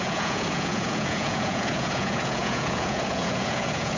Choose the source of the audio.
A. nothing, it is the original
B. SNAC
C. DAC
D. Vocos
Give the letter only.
D